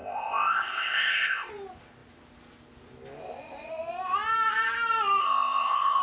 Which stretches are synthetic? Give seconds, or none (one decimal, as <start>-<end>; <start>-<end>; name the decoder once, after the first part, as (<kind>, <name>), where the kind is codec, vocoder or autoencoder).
0.0-1.5 (codec, ZipCodec); 5.2-6.0